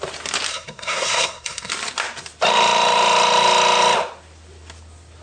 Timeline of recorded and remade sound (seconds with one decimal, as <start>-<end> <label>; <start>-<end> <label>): 0.0-0.5 recorded; 0.5-1.7 remade; 1.7-5.2 recorded